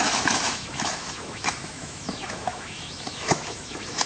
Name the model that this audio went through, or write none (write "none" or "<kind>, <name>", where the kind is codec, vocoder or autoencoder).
autoencoder, DAC-VAE